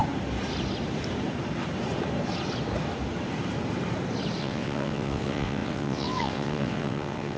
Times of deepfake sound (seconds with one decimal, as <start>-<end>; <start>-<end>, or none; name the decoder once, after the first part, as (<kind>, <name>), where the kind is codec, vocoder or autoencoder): 4.4-7.4 (vocoder, WaveNeXt)